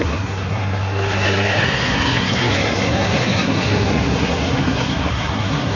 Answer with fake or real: fake